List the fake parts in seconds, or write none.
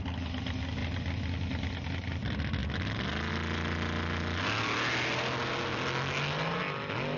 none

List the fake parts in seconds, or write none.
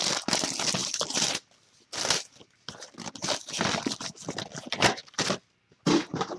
0.8-1.5 (vocoder, BigVGAN v2)